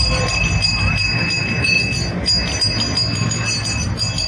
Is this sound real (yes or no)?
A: yes